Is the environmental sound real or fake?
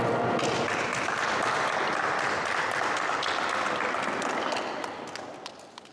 real